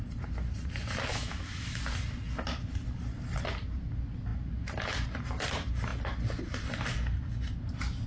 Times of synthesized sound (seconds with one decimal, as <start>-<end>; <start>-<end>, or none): 1.1-1.8